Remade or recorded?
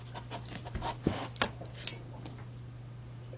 recorded